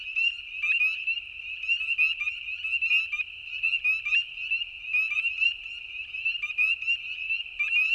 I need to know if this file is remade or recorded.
recorded